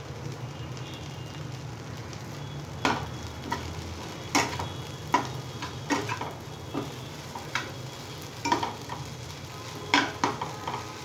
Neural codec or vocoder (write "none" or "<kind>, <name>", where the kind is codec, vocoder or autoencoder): none